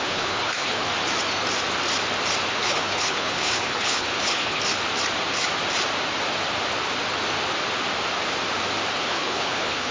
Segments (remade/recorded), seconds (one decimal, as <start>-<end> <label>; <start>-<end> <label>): 0.0-0.9 remade; 0.9-2.5 recorded; 2.5-4.6 remade; 4.6-9.0 recorded; 9.0-9.9 remade